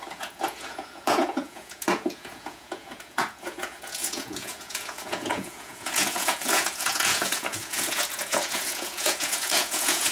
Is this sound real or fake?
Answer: fake